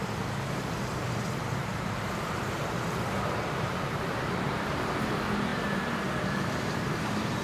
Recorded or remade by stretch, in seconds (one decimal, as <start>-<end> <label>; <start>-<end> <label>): 0.0-5.5 remade; 5.5-6.3 recorded; 6.3-7.4 remade